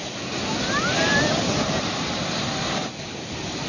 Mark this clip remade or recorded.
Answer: recorded